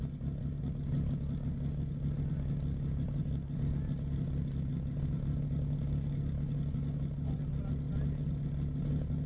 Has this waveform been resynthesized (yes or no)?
no